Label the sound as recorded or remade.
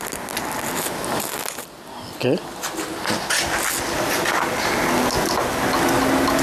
recorded